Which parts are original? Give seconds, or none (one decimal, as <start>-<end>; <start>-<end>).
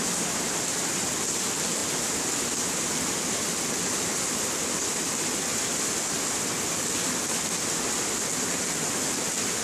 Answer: 0.0-9.6